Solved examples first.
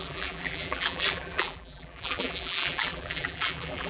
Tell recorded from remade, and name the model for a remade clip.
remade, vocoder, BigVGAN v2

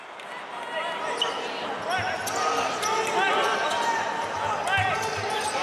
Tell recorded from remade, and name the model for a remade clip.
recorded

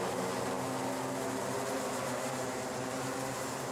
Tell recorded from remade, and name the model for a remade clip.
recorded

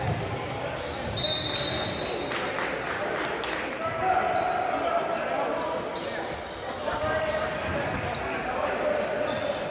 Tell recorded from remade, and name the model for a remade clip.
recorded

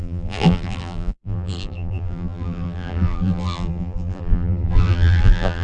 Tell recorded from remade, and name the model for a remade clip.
remade, vocoder, BigVGAN v2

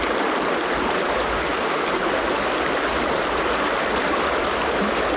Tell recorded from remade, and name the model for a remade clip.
recorded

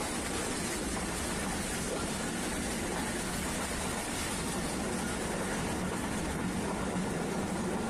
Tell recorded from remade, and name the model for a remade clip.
recorded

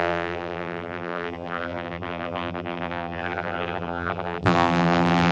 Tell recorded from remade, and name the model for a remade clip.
remade, vocoder, BigVGAN v2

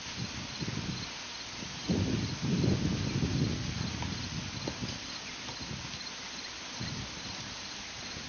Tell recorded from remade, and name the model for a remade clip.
recorded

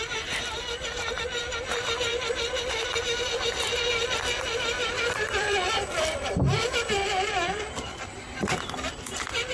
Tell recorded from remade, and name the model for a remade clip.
remade, vocoder, BigVGAN v2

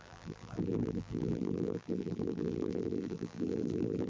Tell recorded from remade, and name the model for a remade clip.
remade, vocoder, BigVGAN v2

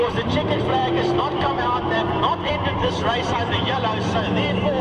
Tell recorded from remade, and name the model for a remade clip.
remade, vocoder, BigVGAN v2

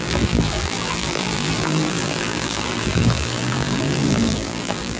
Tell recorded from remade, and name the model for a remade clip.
remade, vocoder, BigVGAN v2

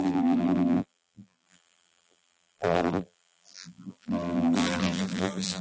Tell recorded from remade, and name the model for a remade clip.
remade, vocoder, BigVGAN v2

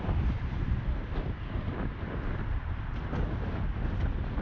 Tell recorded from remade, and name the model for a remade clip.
remade, vocoder, BigVGAN v2